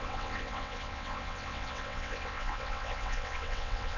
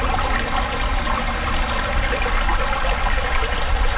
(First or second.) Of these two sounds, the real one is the second